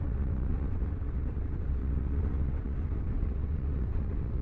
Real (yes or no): no